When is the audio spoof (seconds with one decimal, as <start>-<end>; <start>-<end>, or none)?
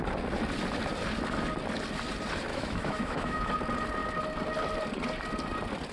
2.5-3.5